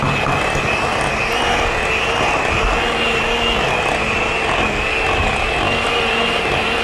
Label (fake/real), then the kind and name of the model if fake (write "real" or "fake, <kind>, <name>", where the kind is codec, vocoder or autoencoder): real